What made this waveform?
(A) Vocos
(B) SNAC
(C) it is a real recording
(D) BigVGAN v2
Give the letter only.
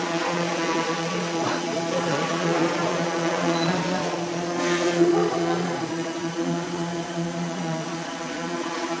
A